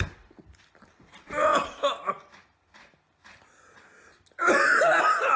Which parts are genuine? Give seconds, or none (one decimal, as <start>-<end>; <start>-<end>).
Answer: 0.0-5.4